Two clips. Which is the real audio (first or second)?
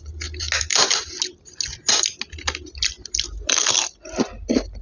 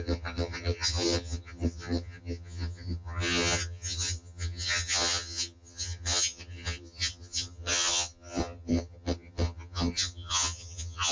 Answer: first